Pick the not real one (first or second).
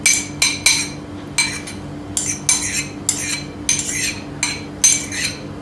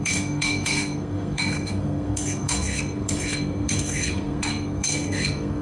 second